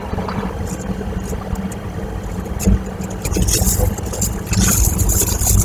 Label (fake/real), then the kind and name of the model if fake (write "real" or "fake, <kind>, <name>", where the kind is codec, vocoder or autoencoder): fake, vocoder, BigVGAN v2